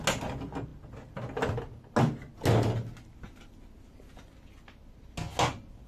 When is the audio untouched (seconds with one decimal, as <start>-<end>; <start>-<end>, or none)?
0.0-5.9